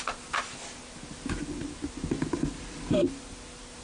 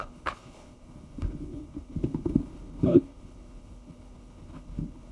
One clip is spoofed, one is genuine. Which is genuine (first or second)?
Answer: first